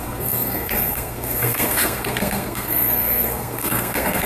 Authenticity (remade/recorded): remade